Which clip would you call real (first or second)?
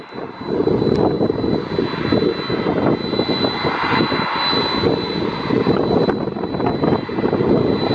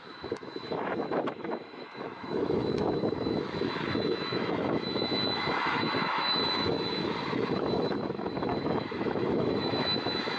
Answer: first